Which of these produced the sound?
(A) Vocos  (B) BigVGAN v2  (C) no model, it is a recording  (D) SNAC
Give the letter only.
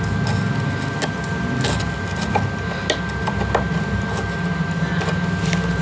C